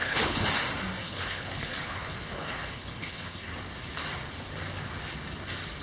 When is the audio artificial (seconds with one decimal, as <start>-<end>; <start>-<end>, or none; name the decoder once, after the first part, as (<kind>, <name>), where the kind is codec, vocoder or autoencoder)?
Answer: 0.0-0.5 (codec, HILCodec); 1.0-3.5